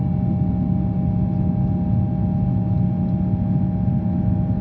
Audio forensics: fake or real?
real